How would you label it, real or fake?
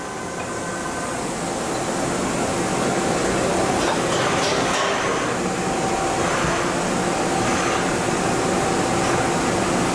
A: real